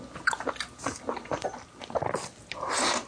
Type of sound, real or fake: real